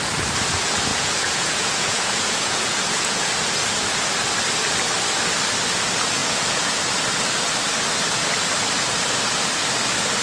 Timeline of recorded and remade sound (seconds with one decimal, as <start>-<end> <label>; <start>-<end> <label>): 0.0-0.9 recorded; 0.9-3.3 remade; 3.3-6.2 recorded; 6.2-6.8 remade; 6.8-10.2 recorded